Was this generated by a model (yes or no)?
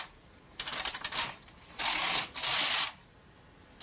no